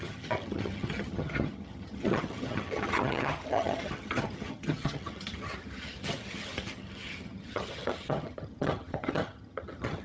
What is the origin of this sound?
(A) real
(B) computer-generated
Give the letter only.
B